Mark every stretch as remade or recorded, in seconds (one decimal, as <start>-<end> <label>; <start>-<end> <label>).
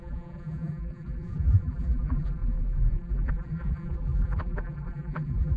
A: 0.0-5.6 remade